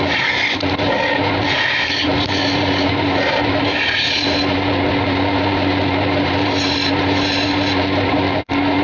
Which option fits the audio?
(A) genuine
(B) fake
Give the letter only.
B